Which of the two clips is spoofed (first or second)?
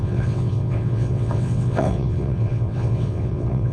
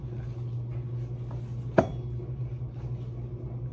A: first